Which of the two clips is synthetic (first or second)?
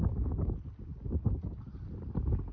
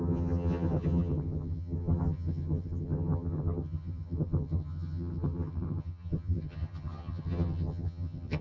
second